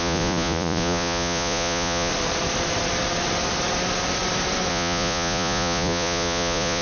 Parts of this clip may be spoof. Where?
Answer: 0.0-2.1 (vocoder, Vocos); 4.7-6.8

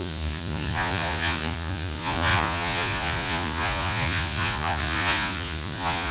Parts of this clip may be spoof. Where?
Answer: 0.0-6.1 (vocoder, Vocos)

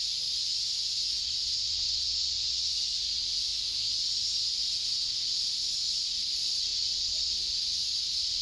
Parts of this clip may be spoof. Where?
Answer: 0.0-0.4 (vocoder, Vocos); 1.2-3.5; 4.7-8.4